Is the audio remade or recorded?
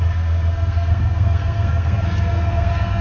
remade